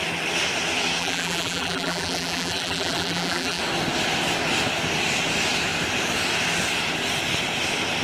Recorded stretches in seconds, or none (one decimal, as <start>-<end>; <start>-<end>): 0.0-1.0; 3.6-8.0